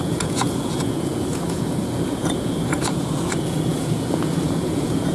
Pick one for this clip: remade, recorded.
remade